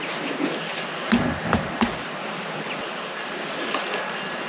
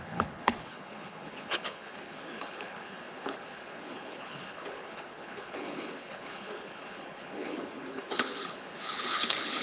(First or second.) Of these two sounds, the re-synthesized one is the second